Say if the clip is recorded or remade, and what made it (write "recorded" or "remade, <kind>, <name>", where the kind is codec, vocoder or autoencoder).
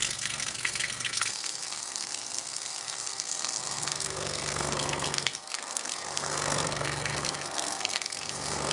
remade, codec, SNAC